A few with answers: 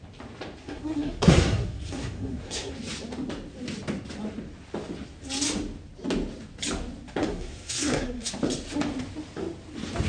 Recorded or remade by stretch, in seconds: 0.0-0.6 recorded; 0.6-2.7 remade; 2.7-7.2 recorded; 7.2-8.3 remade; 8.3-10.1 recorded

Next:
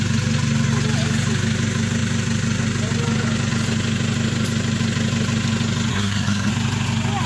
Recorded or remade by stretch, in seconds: 0.0-5.9 recorded; 5.9-6.5 remade; 6.5-7.3 recorded

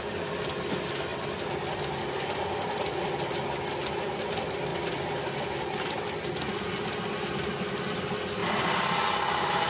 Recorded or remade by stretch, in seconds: 0.0-1.1 recorded; 1.1-3.1 remade; 3.1-4.7 recorded; 4.7-5.4 remade; 5.4-9.7 recorded